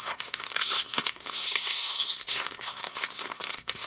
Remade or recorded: remade